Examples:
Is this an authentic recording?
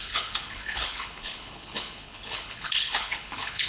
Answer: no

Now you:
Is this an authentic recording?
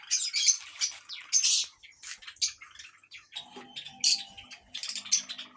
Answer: yes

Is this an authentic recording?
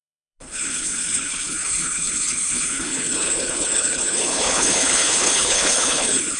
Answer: no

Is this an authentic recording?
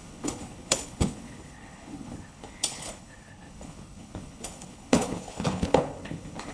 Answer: no